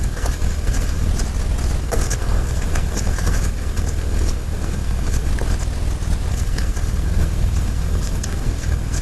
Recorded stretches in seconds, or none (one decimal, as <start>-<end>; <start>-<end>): 1.1-1.8; 5.3-6.3